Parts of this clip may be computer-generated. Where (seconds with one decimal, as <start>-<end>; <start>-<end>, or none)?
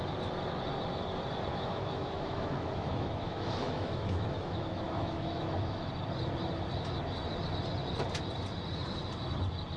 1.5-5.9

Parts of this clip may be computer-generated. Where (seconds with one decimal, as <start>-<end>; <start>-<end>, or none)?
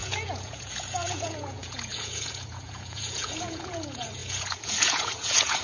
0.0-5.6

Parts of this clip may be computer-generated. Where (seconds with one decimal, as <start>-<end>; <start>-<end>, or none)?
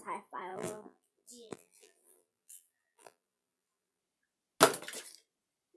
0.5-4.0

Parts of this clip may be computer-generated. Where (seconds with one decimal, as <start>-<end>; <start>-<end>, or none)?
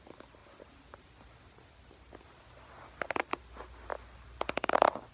none